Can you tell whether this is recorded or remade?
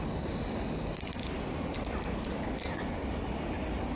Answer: recorded